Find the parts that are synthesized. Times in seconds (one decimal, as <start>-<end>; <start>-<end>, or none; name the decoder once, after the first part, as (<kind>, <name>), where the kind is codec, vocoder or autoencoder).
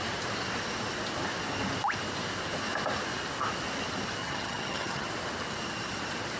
4.2-5.1 (vocoder, HiFi-GAN)